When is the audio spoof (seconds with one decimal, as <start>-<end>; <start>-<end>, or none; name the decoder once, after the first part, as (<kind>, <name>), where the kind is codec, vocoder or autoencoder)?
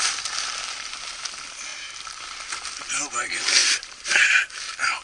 3.6-4.4 (vocoder, BigVGAN v2)